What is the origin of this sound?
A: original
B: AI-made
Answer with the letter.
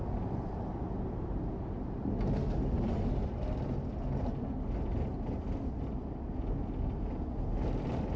A